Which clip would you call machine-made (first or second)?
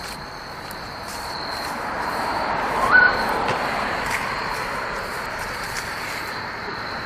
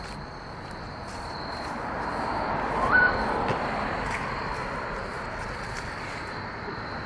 first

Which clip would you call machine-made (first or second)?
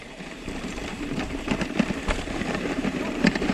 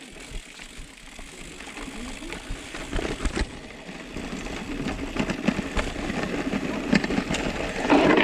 first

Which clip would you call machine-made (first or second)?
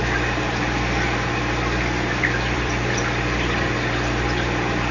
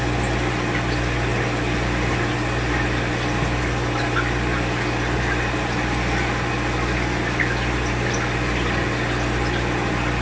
first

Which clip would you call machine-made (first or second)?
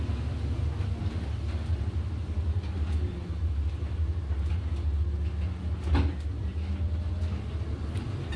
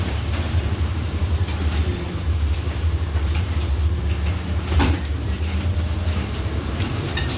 second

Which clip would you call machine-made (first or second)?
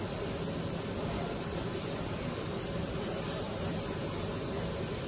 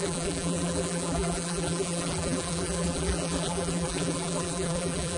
second